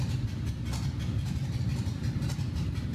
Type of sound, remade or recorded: recorded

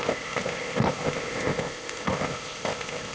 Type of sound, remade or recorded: remade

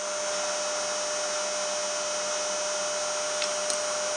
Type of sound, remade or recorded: recorded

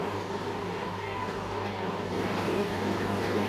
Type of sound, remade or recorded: remade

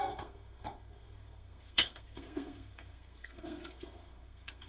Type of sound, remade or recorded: remade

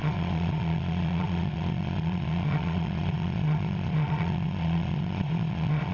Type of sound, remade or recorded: remade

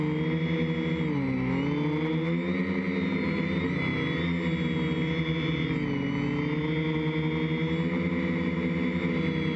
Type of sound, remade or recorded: recorded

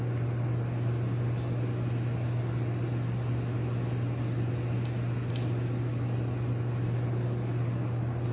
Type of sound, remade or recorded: recorded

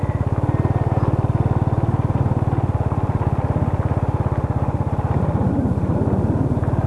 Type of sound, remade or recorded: recorded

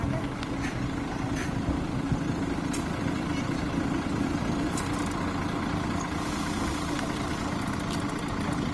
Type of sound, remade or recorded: recorded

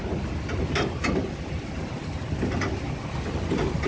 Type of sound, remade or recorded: recorded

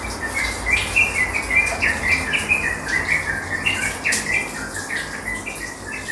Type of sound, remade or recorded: recorded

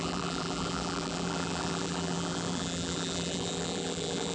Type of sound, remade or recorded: remade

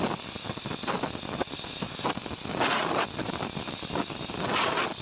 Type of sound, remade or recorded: recorded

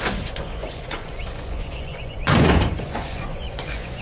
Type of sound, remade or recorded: remade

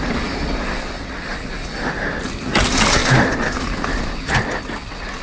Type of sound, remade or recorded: recorded